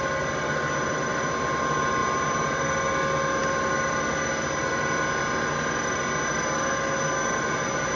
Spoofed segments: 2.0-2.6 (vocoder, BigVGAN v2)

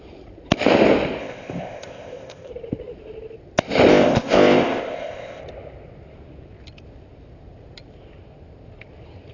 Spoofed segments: 1.2-2.5 (codec, ZipCodec); 3.9-5.4

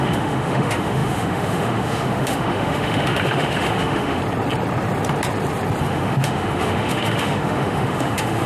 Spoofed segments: 0.0-4.2 (autoencoder, DAC-VAE); 5.8-8.5

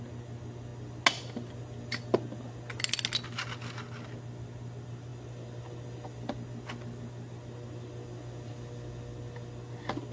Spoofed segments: none

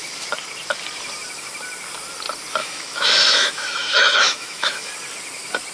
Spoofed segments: 2.6-4.9 (autoencoder, DAC-VAE)

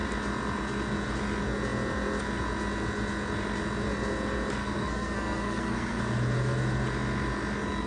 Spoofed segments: 4.6-6.0 (codec, SNAC)